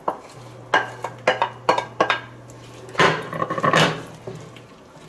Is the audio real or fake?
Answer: real